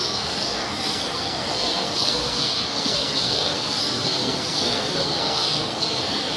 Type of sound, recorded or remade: remade